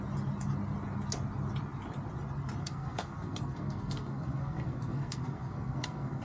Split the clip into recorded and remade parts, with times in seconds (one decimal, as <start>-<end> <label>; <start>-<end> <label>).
0.0-2.6 recorded; 2.6-6.2 remade

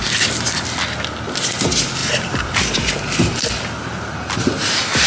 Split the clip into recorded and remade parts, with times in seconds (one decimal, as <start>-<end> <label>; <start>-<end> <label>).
0.0-5.1 recorded

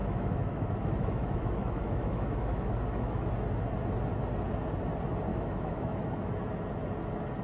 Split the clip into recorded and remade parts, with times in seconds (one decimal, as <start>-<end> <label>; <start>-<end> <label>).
0.0-3.3 remade; 3.3-5.3 recorded; 5.3-6.3 remade; 6.3-7.4 recorded

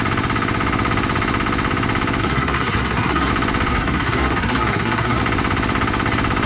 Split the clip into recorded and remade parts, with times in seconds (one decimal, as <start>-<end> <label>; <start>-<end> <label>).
0.0-2.2 recorded; 2.2-3.3 remade; 3.3-3.7 recorded; 3.7-5.2 remade; 5.2-6.5 recorded

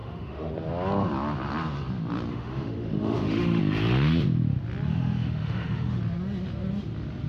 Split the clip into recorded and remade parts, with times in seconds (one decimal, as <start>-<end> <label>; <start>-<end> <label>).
0.0-0.5 remade; 0.5-2.3 recorded; 2.3-3.6 remade; 3.6-4.9 recorded; 4.9-6.0 remade; 6.0-7.3 recorded

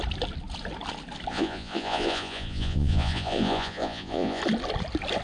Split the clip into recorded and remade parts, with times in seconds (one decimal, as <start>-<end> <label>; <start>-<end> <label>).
0.0-1.3 recorded; 1.3-4.4 remade; 4.4-5.2 recorded

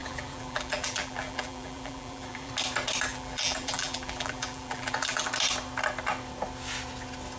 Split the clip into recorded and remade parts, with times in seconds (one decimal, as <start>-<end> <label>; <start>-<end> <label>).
0.0-2.5 remade; 2.5-3.1 recorded; 3.1-5.3 remade; 5.3-7.4 recorded